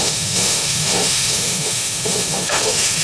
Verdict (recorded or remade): remade